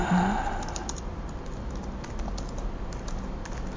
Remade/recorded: recorded